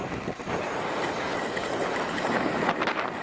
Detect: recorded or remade remade